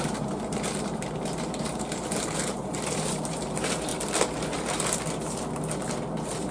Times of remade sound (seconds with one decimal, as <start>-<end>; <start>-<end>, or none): 0.0-3.9

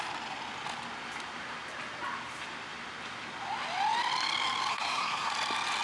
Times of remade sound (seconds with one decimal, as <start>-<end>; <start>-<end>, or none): 4.7-5.3

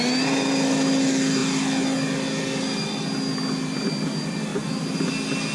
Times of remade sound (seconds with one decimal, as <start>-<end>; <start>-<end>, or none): none

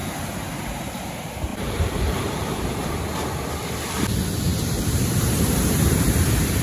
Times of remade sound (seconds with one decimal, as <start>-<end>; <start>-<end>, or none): 0.0-1.1; 1.5-2.9; 4.5-6.6

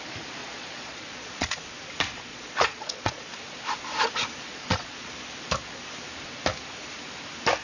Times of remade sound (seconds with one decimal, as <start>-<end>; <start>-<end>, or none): 0.4-1.6; 2.3-3.3; 4.5-5.1